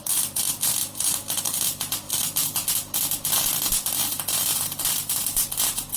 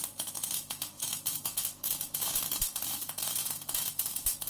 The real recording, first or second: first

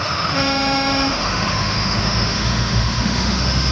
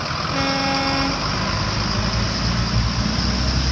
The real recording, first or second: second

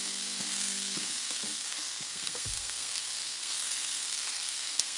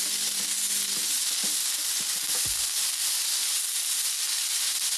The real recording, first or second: second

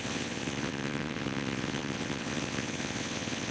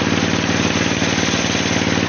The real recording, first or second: second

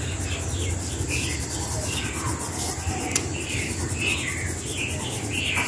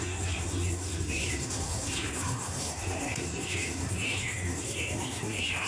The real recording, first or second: first